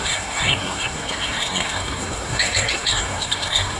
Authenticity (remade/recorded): remade